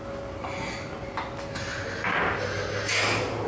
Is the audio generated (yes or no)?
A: no